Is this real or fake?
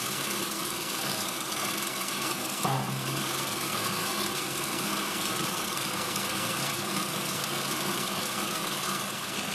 fake